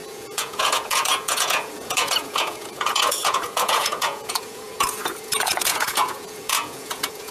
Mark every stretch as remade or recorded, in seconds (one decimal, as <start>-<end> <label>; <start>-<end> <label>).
0.0-7.3 remade